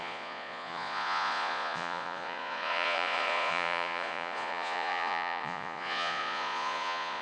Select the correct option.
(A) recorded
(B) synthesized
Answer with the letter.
B